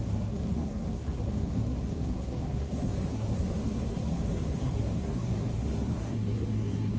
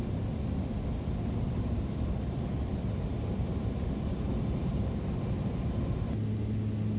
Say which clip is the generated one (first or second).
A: first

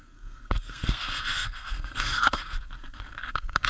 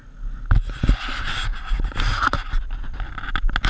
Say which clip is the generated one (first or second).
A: first